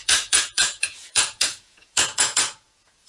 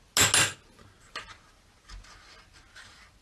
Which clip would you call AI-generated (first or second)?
first